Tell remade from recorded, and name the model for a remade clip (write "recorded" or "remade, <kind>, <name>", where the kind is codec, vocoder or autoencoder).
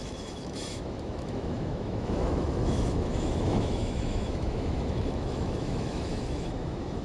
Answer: remade, autoencoder, DAC-VAE